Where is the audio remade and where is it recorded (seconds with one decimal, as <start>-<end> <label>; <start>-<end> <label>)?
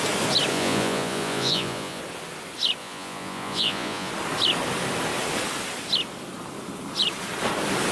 0.0-0.5 recorded; 0.5-2.0 remade; 2.0-2.8 recorded; 2.8-4.1 remade; 4.1-7.9 recorded